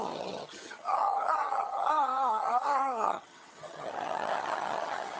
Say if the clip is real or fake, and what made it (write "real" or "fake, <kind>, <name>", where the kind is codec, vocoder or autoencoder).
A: fake, vocoder, HiFi-GAN